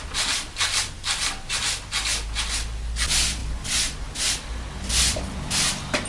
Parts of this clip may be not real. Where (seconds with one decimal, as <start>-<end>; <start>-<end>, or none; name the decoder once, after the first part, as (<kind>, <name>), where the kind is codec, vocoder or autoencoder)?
none